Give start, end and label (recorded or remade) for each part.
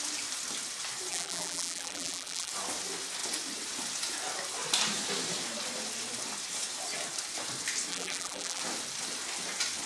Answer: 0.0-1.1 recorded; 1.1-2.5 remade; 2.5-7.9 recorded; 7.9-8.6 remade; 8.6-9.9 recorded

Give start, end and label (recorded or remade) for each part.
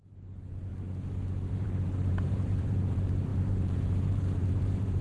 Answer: 0.0-0.7 remade; 0.7-1.5 recorded; 1.5-5.0 remade